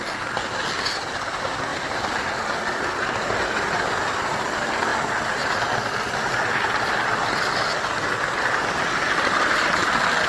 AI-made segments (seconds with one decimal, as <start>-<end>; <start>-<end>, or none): none